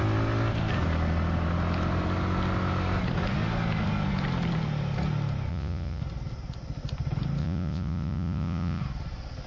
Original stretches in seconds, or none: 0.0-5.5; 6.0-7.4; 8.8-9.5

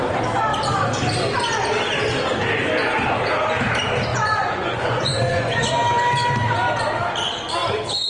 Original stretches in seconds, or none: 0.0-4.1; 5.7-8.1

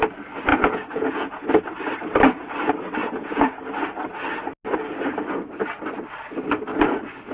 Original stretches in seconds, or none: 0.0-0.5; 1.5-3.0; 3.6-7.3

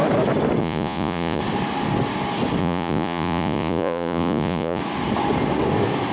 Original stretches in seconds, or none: 0.0-0.6; 1.4-2.6; 4.8-6.1

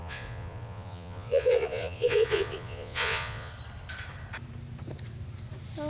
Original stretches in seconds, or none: 3.5-5.9

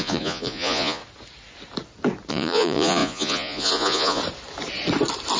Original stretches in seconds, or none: 1.0-2.3; 4.2-5.4

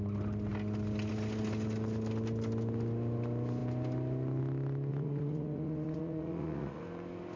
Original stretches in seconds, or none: 0.0-4.9; 6.8-7.4

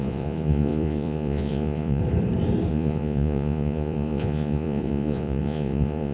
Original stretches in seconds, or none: 2.0-2.7